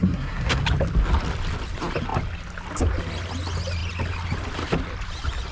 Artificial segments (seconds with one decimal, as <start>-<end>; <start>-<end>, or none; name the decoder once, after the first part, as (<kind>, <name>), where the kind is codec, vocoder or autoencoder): 0.0-0.6 (codec, SNAC)